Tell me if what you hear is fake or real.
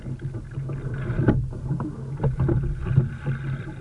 real